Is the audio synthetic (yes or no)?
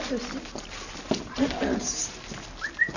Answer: no